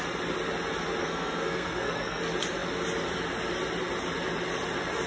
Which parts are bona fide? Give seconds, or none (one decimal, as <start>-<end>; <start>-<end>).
0.0-1.0; 2.2-5.1